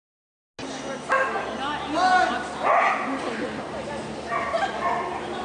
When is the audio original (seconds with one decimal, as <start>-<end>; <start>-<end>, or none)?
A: 0.0-5.4